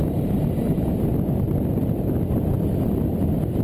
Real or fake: real